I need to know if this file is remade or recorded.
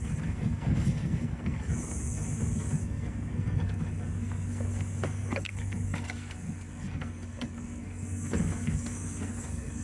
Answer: remade